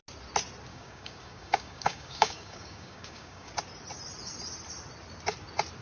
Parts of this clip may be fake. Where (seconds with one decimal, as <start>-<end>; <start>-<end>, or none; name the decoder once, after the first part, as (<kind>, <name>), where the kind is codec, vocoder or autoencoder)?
0.7-3.5 (codec, DAC)

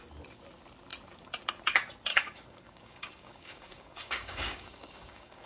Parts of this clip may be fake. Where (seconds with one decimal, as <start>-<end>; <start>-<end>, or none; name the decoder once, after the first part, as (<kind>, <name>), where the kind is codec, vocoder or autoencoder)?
2.1-5.5 (codec, DAC)

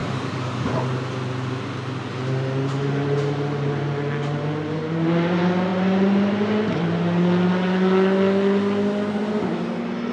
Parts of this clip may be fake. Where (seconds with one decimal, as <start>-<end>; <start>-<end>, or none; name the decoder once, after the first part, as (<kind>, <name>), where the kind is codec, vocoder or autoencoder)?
0.0-0.7 (codec, DAC)

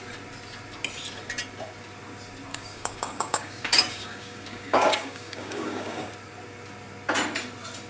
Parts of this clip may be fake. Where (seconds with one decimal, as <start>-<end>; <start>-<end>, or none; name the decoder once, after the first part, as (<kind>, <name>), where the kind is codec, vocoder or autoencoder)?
2.5-6.1 (codec, DAC)